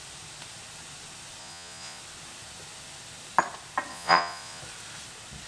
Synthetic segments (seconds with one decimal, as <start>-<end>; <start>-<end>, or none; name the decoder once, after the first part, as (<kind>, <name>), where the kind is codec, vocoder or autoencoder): 1.4-2.0 (vocoder, Vocos); 3.9-4.6